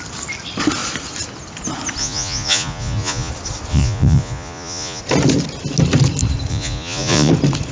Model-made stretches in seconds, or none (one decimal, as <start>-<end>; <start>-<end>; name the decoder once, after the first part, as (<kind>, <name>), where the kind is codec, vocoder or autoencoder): 2.0-3.3 (vocoder, Vocos); 3.7-5.0; 6.5-7.3